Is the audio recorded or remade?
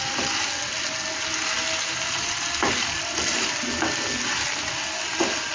recorded